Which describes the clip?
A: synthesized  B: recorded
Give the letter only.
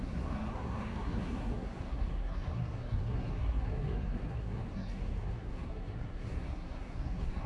A